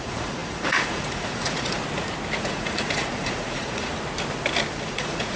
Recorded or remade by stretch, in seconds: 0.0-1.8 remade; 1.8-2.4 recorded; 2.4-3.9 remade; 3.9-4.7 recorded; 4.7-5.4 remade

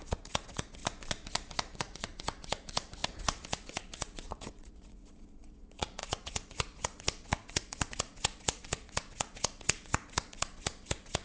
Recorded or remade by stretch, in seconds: 0.0-0.8 remade; 0.8-1.8 recorded; 1.8-11.2 remade

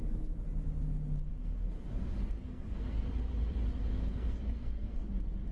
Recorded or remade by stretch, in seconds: 0.0-1.3 recorded; 1.3-3.1 remade; 3.1-3.9 recorded; 3.9-5.1 remade; 5.1-5.5 recorded

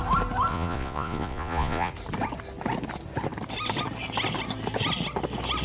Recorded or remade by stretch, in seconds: 0.0-0.5 recorded; 0.5-1.9 remade; 1.9-5.6 recorded

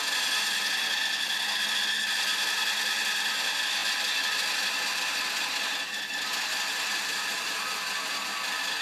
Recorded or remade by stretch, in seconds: 0.0-8.8 recorded